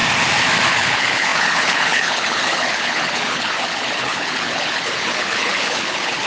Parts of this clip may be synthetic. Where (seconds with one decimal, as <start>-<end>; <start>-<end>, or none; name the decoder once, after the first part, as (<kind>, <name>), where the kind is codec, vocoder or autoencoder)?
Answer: 0.7-6.3 (codec, HILCodec)